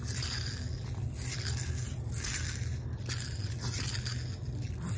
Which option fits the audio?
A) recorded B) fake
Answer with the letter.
A